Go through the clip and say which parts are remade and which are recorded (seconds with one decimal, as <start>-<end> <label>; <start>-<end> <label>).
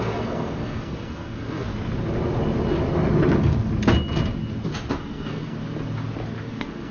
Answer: 0.0-1.7 remade; 1.7-4.9 recorded; 4.9-5.6 remade; 5.6-6.5 recorded; 6.5-6.9 remade